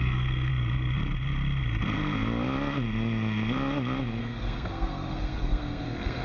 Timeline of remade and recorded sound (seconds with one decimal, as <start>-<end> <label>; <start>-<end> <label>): 0.0-0.5 remade; 0.5-4.2 recorded; 4.2-6.2 remade